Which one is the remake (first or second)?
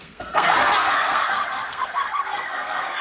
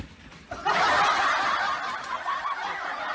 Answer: first